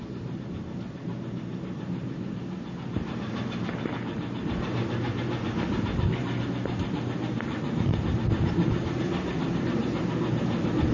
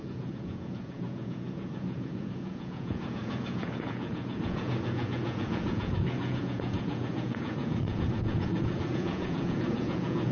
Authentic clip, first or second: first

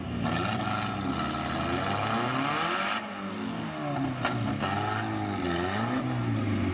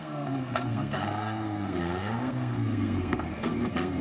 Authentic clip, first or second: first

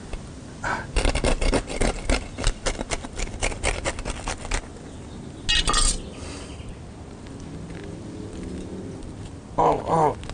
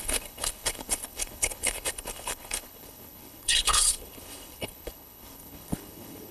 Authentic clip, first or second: first